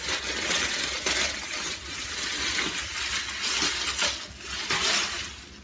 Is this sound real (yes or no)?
yes